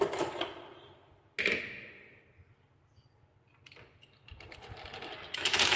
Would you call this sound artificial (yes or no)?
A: no